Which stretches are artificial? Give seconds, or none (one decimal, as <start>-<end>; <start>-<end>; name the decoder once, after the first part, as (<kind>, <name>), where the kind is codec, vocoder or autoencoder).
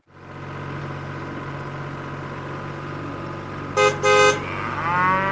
none